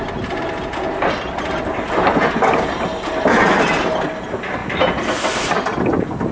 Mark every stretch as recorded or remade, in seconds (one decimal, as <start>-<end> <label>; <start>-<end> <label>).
0.0-6.3 recorded